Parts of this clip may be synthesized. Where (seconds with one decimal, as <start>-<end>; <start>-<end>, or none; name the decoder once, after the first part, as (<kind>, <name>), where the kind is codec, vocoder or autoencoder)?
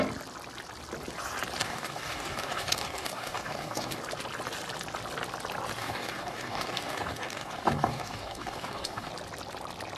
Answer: 1.6-4.0 (codec, DAC); 5.8-9.1